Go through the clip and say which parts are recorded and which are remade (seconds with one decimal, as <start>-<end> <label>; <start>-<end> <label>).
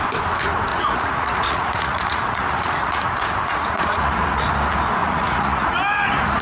0.0-0.7 recorded; 0.7-4.5 remade; 4.5-5.0 recorded; 5.0-5.8 remade; 5.8-6.4 recorded